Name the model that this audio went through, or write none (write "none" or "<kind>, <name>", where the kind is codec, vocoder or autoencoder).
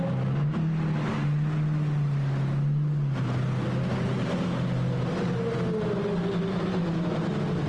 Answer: none